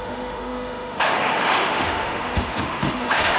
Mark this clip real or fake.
fake